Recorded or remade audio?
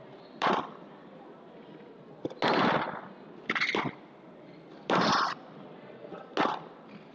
recorded